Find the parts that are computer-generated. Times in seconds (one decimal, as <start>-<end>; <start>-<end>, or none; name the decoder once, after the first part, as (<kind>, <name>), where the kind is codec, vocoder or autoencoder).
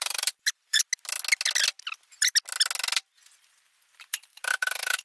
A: 0.0-0.8 (vocoder, BigVGAN v2); 3.8-5.0